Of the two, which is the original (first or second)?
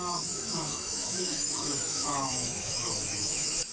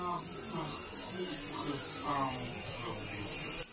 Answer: second